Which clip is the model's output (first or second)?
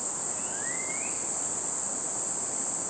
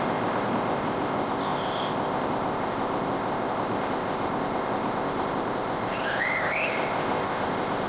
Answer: second